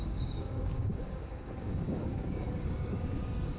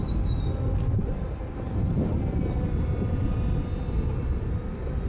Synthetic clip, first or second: first